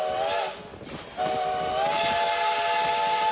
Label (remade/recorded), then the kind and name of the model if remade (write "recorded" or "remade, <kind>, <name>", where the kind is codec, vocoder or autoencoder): recorded